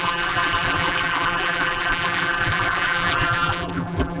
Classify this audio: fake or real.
fake